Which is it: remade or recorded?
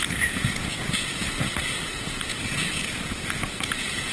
remade